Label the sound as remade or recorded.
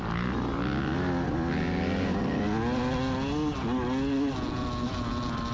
recorded